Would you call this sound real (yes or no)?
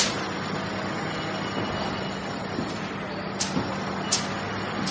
yes